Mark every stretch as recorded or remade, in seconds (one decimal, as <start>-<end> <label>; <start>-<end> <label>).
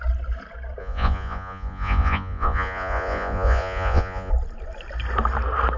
0.0-0.8 recorded; 0.8-4.3 remade; 4.3-5.8 recorded